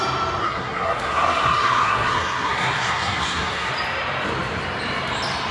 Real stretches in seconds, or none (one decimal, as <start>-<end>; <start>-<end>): 0.0-0.4; 3.7-5.5